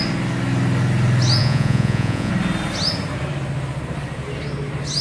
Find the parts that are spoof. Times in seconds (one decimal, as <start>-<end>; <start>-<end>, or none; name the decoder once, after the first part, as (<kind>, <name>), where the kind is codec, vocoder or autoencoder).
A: 1.4-2.3 (vocoder, Vocos)